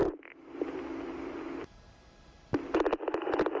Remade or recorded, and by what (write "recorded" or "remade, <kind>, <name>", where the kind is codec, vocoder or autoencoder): recorded